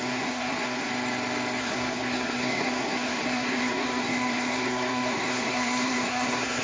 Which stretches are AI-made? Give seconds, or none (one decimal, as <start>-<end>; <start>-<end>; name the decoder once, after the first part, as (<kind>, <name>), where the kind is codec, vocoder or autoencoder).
0.0-0.9 (codec, SNAC); 1.6-6.6